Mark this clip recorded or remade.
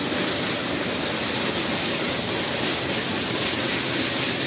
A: remade